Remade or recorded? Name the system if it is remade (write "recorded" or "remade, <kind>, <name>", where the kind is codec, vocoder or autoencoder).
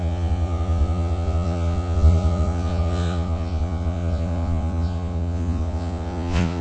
remade, vocoder, Vocos